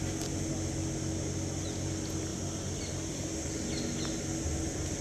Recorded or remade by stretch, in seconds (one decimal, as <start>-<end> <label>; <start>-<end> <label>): 0.0-5.0 recorded